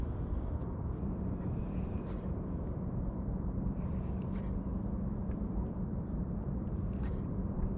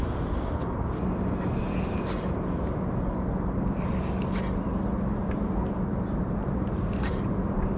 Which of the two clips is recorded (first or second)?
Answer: second